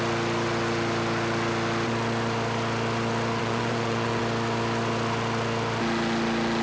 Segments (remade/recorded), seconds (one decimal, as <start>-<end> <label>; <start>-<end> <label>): 0.0-3.4 recorded; 3.4-4.2 remade; 4.2-6.6 recorded